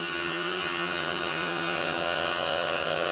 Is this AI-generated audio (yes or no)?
yes